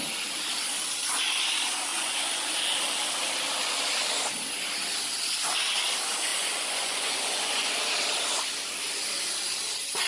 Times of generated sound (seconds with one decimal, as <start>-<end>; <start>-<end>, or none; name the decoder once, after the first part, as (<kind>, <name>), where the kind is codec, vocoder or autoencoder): 1.9-2.5 (vocoder, Vocos); 6.3-7.8